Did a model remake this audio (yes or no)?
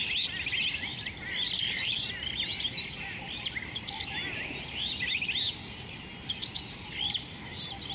no